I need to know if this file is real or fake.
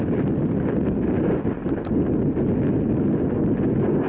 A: real